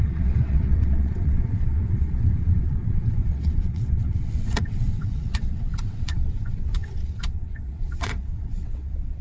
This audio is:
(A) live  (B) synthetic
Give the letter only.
B